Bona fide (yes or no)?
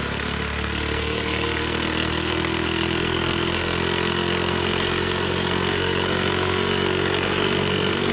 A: no